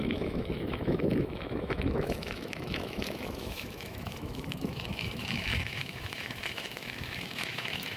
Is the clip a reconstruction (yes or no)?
yes